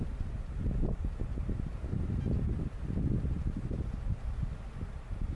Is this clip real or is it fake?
fake